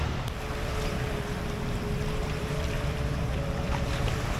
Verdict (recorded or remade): remade